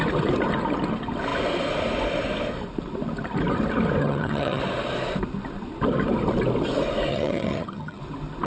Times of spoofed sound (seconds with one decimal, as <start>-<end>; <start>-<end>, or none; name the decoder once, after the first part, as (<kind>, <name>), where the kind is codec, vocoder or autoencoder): 4.0-4.6 (vocoder, HiFi-GAN); 7.1-8.0